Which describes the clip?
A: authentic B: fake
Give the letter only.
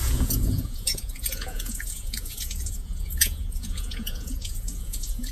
B